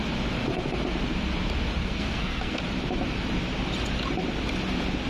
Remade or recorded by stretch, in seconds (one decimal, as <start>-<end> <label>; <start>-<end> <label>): 0.0-1.8 recorded; 1.8-2.6 remade; 2.6-5.1 recorded